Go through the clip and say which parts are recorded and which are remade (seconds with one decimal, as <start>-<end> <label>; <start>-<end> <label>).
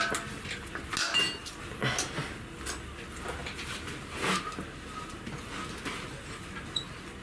0.0-1.0 recorded; 1.0-1.6 remade; 1.6-3.4 recorded; 3.4-4.0 remade; 4.0-7.2 recorded